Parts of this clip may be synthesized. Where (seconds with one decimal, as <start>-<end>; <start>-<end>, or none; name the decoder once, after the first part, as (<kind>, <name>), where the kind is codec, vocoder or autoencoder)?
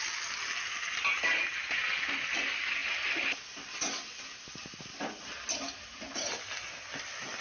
none